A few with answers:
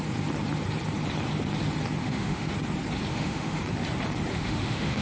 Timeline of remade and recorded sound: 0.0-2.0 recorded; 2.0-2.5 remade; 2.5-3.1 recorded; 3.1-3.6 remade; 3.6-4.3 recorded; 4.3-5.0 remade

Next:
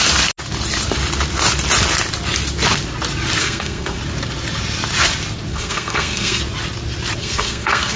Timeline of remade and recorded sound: 0.0-3.4 recorded; 3.4-4.0 remade; 4.0-5.5 recorded; 5.5-6.4 remade; 6.4-7.2 recorded; 7.2-8.0 remade

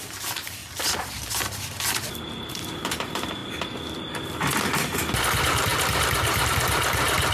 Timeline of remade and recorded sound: 0.0-0.6 remade; 0.6-2.5 recorded; 2.5-3.4 remade; 3.4-5.2 recorded; 5.2-7.3 remade

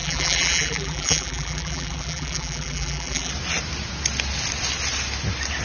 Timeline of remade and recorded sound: 0.0-3.3 remade; 3.3-5.6 recorded

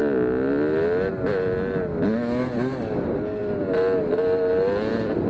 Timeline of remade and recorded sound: 0.0-5.3 recorded